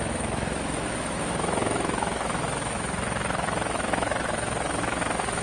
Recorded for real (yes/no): no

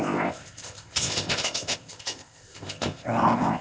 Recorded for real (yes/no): no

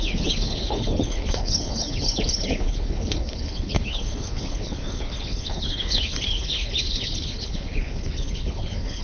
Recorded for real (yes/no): no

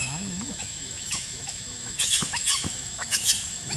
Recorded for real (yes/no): no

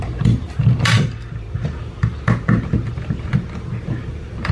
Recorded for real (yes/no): no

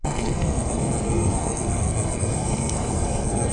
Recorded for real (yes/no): no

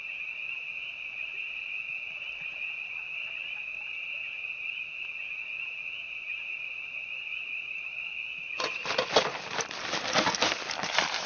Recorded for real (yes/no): yes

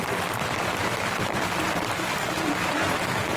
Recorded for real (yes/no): yes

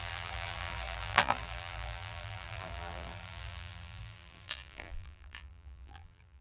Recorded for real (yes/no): no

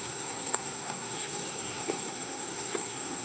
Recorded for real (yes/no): no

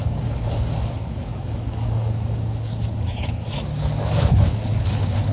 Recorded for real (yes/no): no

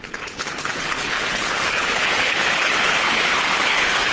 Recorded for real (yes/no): no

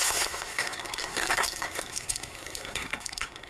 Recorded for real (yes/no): no